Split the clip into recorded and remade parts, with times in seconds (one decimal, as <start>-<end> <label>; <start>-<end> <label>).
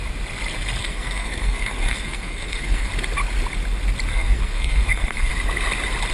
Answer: 0.0-0.8 recorded; 0.8-2.9 remade; 2.9-4.1 recorded; 4.1-5.3 remade; 5.3-6.1 recorded